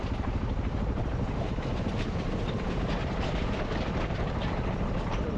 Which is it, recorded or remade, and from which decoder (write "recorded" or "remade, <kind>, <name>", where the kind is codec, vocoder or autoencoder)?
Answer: remade, vocoder, BigVGAN v2